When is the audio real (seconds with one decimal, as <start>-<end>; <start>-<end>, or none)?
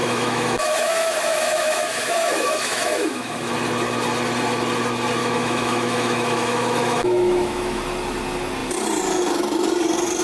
3.5-5.2; 7.8-10.2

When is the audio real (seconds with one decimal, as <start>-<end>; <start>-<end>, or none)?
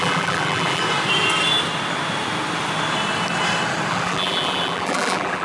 0.8-3.9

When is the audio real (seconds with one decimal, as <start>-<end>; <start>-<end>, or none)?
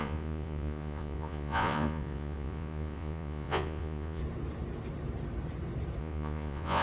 4.2-6.0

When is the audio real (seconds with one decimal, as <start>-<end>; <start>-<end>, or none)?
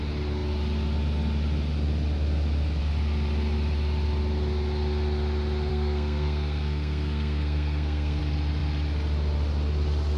0.0-5.7; 8.2-10.2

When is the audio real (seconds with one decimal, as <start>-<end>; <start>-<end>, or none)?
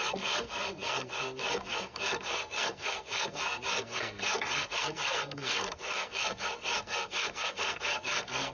none